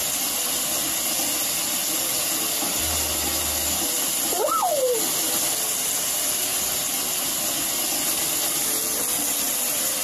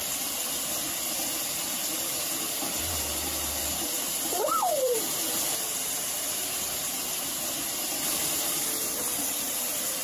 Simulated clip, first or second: second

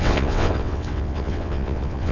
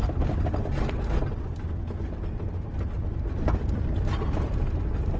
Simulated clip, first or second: first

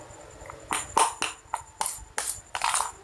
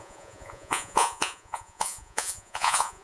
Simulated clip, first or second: second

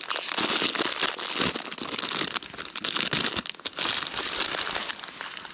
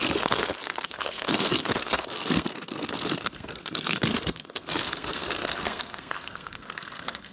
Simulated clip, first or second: second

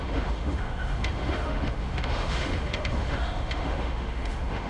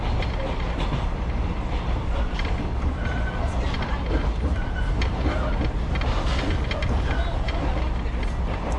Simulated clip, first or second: first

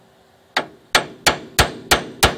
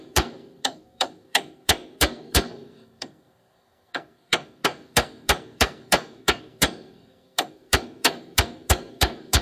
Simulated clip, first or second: second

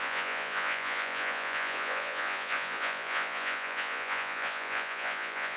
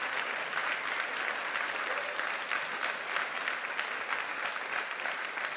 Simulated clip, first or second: first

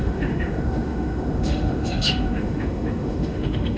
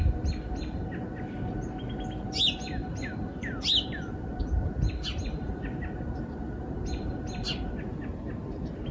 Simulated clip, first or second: first